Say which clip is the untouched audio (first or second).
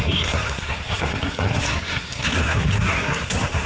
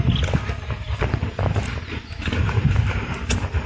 second